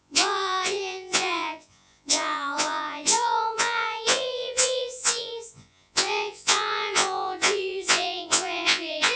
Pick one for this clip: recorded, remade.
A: remade